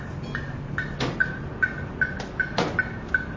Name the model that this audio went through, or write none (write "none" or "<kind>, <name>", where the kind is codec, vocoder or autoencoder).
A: none